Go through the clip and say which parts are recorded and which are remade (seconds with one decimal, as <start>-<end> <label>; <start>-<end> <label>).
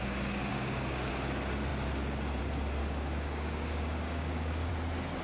0.0-0.5 recorded; 0.5-1.1 remade; 1.1-2.8 recorded; 2.8-4.7 remade; 4.7-5.2 recorded